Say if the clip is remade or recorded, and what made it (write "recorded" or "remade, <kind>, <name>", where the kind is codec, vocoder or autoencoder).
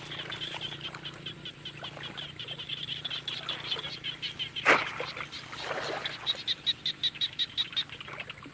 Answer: recorded